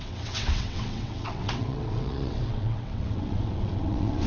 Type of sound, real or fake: fake